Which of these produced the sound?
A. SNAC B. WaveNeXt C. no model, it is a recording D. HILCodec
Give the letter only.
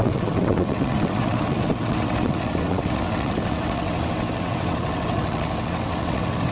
B